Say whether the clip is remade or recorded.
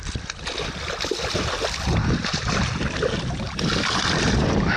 recorded